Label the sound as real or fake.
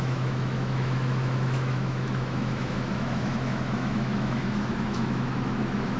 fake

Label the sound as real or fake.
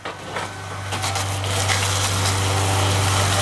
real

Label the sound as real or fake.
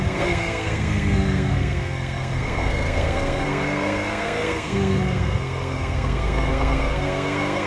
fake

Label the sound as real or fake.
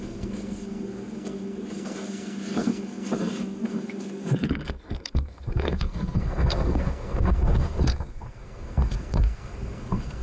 fake